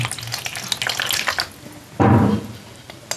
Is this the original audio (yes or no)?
yes